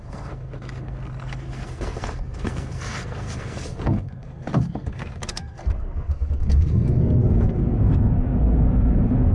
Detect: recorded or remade remade